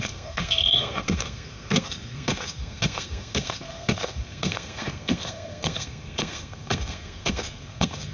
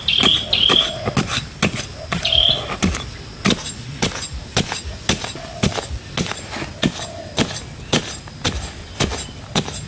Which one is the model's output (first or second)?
first